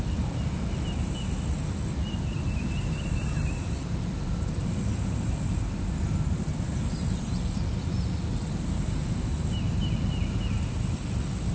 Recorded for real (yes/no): no